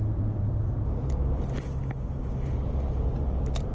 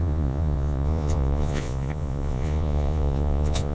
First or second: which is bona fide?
first